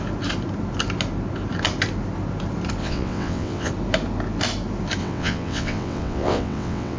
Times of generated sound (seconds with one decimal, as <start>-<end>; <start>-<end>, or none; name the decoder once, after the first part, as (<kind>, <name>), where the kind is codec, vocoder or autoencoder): 2.8-3.7 (vocoder, WaveNeXt); 5.0-7.0